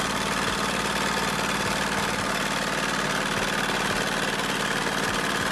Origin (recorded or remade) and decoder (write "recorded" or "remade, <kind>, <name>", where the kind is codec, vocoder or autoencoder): recorded